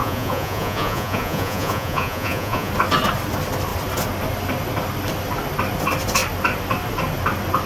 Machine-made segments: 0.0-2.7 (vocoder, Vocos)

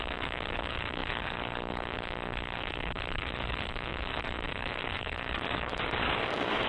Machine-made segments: 0.0-6.7 (codec, DAC)

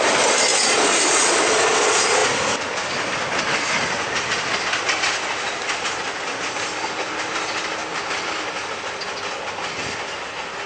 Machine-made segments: none

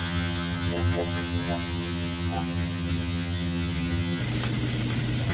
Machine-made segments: 0.0-4.2 (vocoder, HiFi-GAN)

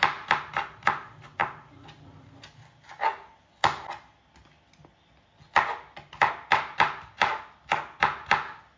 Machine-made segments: none